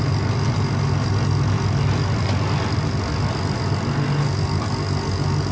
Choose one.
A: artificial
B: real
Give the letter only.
B